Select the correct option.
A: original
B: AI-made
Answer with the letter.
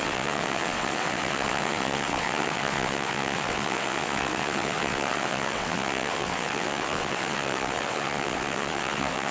B